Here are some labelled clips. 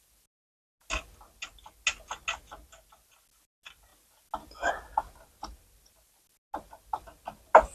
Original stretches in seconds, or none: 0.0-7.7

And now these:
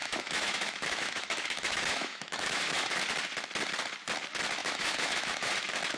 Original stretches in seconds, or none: 3.0-4.6; 5.5-6.0